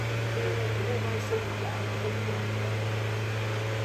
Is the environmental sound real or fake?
real